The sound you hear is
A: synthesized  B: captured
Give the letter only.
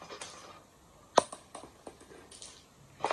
B